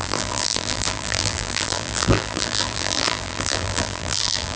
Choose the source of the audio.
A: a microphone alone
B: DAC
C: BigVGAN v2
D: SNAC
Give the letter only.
C